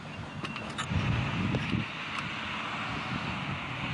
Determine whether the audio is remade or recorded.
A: recorded